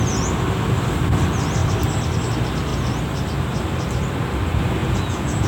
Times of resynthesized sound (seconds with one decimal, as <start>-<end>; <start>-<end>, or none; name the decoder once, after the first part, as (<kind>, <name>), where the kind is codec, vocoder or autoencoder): 4.8-5.5 (vocoder, Vocos)